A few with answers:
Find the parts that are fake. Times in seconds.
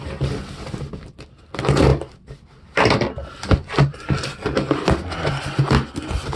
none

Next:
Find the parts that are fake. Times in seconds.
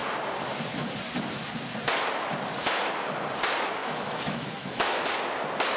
3.8-5.0 (autoencoder, DAC-VAE)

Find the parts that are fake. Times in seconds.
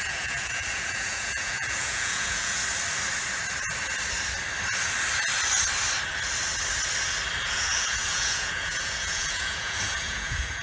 0.0-2.6 (vocoder, Vocos); 7.4-10.6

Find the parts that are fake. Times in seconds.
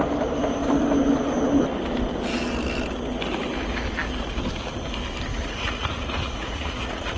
5.3-7.2 (vocoder, Vocos)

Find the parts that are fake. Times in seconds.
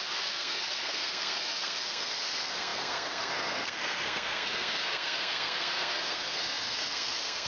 0.0-7.5 (codec, SNAC)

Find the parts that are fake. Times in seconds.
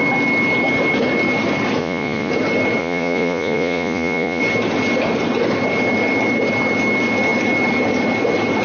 1.8-2.3 (vocoder, Vocos); 2.8-4.4